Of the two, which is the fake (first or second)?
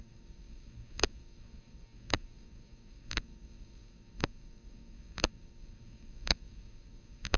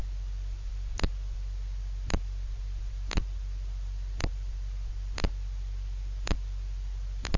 first